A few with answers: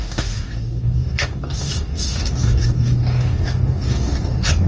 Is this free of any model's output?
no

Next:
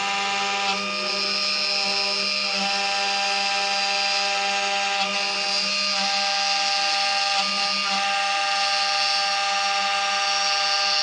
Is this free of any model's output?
yes